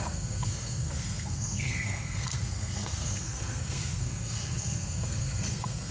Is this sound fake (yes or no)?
yes